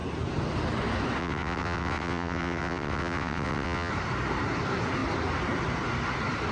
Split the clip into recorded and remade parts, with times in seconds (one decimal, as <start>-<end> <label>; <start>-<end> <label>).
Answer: 0.0-1.2 recorded; 1.2-3.9 remade; 3.9-6.5 recorded